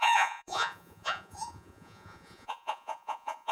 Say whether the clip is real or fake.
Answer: fake